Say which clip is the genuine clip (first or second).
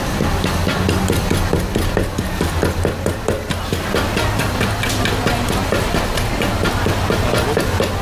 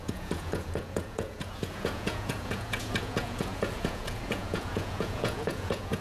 first